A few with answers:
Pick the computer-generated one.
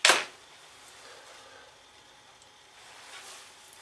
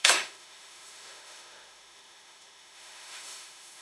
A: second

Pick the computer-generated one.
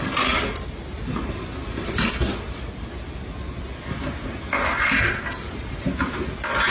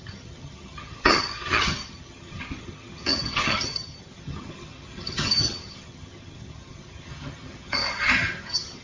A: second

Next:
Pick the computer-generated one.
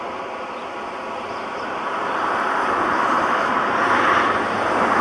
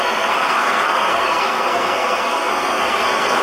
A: second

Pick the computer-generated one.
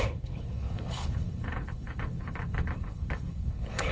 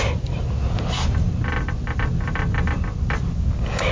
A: first